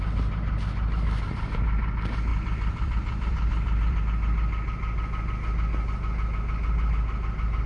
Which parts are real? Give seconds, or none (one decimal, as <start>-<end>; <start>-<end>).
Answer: 0.0-2.3; 4.0-7.7